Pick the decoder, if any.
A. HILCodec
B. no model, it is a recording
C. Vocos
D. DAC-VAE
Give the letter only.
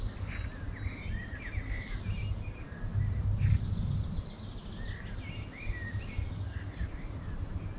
B